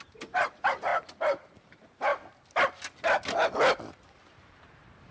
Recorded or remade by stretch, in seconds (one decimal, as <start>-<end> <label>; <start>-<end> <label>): 0.0-0.9 remade; 0.9-1.5 recorded; 1.5-2.1 remade; 2.1-3.9 recorded; 3.9-5.1 remade